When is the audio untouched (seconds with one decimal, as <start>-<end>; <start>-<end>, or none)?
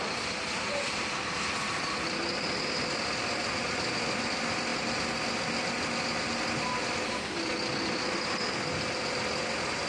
0.0-9.9